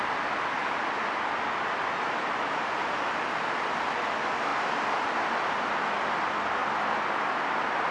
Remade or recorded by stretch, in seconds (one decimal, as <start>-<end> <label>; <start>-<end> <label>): 0.0-7.9 recorded